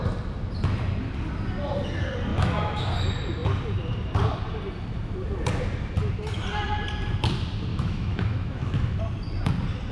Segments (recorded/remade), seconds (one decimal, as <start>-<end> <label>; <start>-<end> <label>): 0.0-2.3 recorded; 2.3-2.8 remade; 2.8-7.7 recorded; 7.7-9.0 remade; 9.0-9.9 recorded